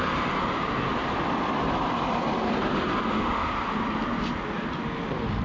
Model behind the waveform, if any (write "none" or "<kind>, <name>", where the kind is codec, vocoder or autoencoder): none